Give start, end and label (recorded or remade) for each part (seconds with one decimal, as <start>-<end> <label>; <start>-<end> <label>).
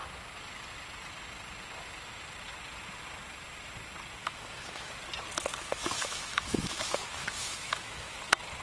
0.0-4.2 recorded; 4.2-4.9 remade; 4.9-5.5 recorded; 5.5-8.2 remade; 8.2-8.6 recorded